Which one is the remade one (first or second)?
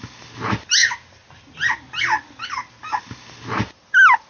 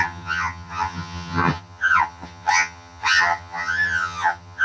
second